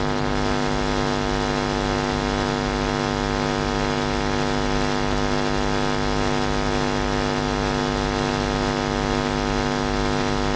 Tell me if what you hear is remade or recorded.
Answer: recorded